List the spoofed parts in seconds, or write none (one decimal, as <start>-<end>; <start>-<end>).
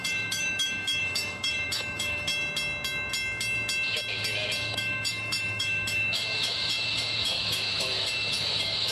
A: 0.0-2.3; 4.7-8.9